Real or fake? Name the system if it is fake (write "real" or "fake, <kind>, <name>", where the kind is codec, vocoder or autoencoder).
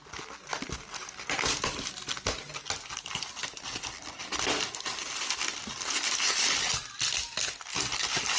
real